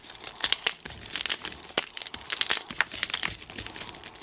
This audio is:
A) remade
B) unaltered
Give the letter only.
B